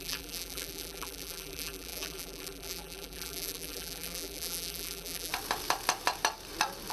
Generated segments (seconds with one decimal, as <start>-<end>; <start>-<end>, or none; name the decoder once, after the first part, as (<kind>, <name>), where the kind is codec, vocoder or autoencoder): 0.0-5.3 (vocoder, BigVGAN v2)

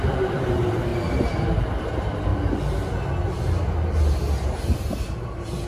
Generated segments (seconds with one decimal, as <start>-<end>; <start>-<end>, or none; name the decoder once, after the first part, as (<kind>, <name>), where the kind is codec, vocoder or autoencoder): 0.0-2.3 (vocoder, BigVGAN v2); 4.6-5.7

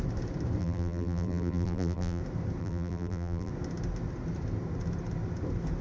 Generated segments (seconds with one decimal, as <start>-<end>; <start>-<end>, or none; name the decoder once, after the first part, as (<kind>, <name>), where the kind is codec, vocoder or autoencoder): 0.6-2.2 (vocoder, BigVGAN v2); 2.6-3.5

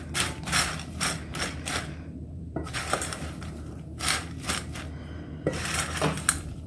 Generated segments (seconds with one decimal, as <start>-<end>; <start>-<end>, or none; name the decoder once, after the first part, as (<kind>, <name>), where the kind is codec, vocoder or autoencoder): 1.3-4.5 (vocoder, BigVGAN v2)

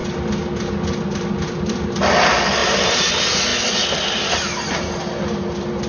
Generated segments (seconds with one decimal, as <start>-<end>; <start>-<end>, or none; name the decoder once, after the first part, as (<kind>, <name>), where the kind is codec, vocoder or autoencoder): 2.6-3.1 (vocoder, BigVGAN v2)